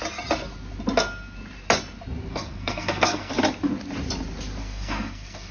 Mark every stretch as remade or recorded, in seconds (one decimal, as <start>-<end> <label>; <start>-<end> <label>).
0.0-2.3 recorded; 2.3-3.3 remade; 3.3-4.6 recorded; 4.6-5.5 remade